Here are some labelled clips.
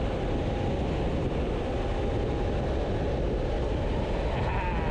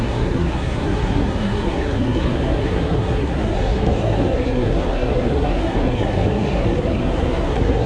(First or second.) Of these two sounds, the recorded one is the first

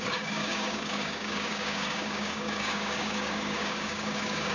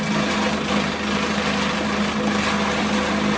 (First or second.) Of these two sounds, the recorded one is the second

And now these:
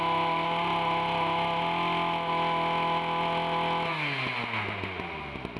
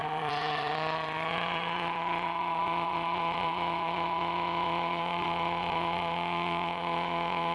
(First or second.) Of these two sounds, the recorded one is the first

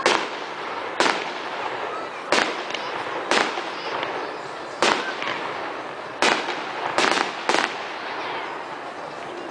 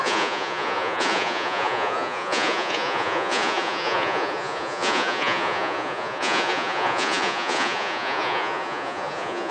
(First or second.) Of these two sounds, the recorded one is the first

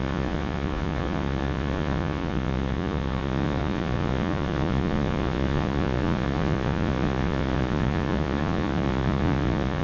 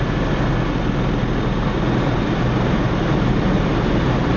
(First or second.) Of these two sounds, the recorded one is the second